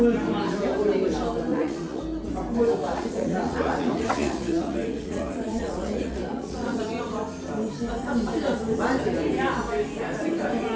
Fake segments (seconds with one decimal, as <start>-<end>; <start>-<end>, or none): 1.5-2.0; 2.8-6.8